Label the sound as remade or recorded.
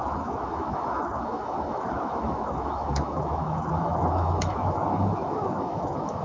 remade